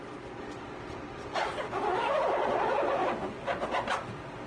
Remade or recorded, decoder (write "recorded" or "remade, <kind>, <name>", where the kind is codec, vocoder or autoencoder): recorded